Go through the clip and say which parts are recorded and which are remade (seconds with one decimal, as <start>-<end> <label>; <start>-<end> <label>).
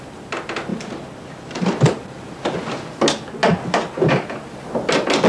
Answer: 0.0-0.7 recorded; 0.7-2.2 remade; 2.2-5.3 recorded